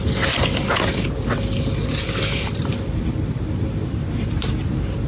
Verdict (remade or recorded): recorded